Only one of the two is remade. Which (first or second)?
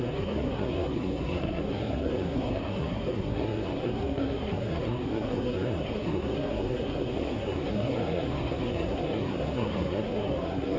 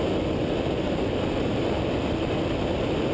first